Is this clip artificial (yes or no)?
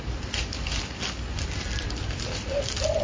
no